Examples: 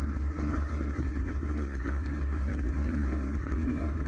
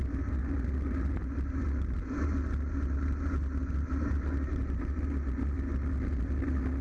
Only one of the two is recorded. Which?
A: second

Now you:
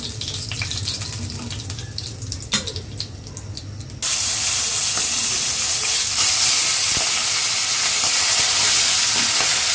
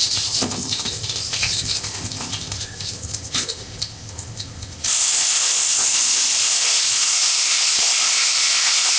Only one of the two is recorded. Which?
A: first